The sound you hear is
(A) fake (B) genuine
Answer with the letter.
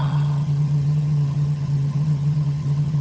A